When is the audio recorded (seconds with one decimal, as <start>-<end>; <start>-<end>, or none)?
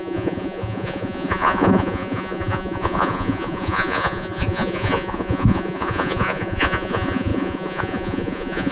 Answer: none